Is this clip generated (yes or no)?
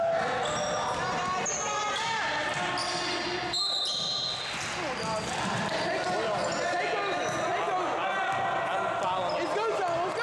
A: no